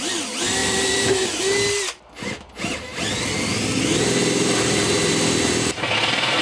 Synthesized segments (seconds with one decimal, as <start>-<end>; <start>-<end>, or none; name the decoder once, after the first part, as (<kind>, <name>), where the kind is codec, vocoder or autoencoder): 0.6-1.4 (vocoder, BigVGAN v2)

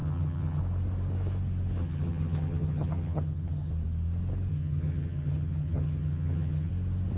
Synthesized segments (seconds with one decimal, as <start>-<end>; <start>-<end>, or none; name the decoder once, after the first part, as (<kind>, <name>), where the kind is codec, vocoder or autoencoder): 0.0-0.6 (vocoder, HiFi-GAN); 1.8-3.7; 4.5-6.7

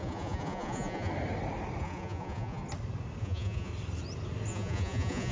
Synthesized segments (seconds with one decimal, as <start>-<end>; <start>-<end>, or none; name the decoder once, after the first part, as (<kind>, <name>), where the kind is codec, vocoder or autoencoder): 0.0-1.1 (vocoder, Vocos); 1.8-2.6; 3.2-3.7; 4.5-5.3

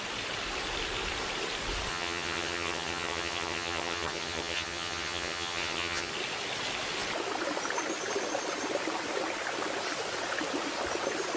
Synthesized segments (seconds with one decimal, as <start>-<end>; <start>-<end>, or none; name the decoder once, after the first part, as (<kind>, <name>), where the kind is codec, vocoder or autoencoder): 1.9-6.1 (vocoder, HiFi-GAN)

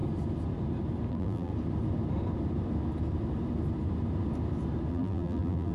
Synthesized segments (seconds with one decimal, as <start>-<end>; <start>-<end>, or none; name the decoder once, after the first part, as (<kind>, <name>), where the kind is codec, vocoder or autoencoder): 1.1-1.5 (vocoder, BigVGAN v2); 4.9-5.7

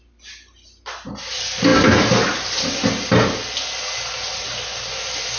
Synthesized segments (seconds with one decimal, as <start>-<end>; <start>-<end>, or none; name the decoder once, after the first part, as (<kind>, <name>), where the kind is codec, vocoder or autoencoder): none

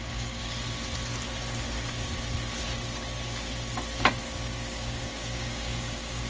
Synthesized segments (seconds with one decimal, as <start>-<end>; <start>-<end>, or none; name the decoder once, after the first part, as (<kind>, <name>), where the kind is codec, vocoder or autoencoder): 0.0-0.4 (codec, DAC); 4.2-6.3

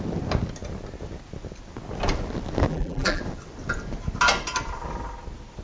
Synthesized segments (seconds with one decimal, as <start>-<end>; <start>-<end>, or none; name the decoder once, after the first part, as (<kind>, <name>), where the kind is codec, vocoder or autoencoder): 2.7-3.2 (vocoder, BigVGAN v2)